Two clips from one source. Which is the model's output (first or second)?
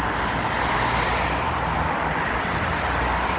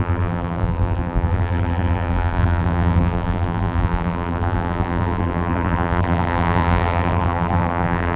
second